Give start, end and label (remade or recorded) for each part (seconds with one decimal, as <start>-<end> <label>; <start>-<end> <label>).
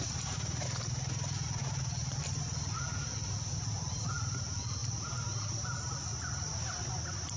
0.0-4.8 remade; 4.8-5.5 recorded; 5.5-6.1 remade; 6.1-7.4 recorded